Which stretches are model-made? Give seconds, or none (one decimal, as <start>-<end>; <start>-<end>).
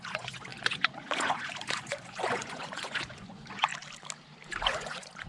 0.0-3.7; 4.5-5.3